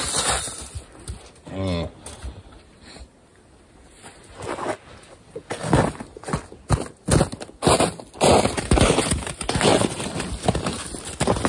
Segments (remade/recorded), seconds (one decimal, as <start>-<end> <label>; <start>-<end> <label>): 0.0-11.5 recorded